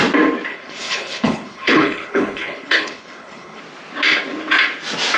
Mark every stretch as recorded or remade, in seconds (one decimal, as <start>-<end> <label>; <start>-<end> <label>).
0.0-0.5 recorded; 0.5-3.6 remade; 3.6-5.2 recorded